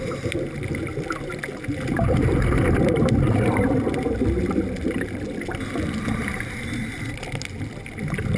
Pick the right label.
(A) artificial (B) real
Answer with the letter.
B